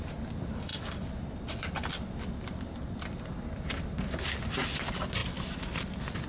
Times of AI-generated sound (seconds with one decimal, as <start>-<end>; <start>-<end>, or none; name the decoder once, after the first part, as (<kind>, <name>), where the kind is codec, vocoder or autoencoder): none